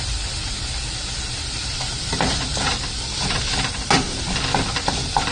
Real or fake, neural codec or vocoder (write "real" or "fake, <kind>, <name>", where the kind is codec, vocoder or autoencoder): fake, vocoder, BigVGAN v2